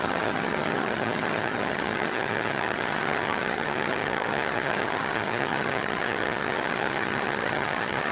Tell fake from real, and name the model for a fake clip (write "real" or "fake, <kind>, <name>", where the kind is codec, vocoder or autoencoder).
fake, vocoder, HiFi-GAN